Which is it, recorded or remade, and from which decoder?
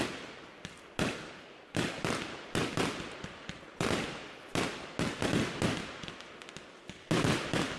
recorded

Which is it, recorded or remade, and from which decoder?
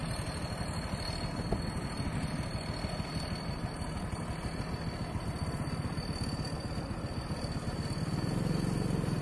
recorded